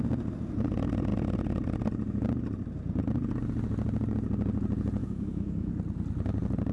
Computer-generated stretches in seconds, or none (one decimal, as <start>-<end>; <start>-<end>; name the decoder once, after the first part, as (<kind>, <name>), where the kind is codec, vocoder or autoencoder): 5.0-5.7 (autoencoder, DAC-VAE)